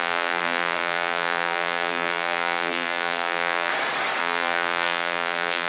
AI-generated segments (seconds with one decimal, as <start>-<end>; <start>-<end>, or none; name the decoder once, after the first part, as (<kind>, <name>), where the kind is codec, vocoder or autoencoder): 0.0-3.7 (vocoder, BigVGAN v2); 4.2-5.7

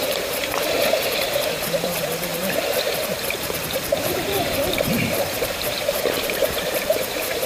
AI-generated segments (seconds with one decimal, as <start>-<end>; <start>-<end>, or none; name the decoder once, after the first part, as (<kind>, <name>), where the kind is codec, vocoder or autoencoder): 0.0-7.5 (vocoder, BigVGAN v2)

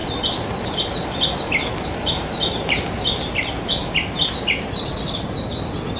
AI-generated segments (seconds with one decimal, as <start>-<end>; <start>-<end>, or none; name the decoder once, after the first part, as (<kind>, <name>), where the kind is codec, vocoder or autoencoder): 0.0-3.6 (vocoder, BigVGAN v2)